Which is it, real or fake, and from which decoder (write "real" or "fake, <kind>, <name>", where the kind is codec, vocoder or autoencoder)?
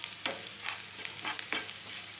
real